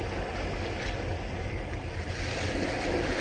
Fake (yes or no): no